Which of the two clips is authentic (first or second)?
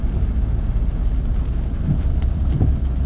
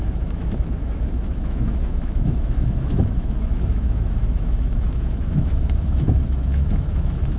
first